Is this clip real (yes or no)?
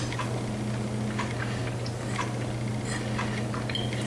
yes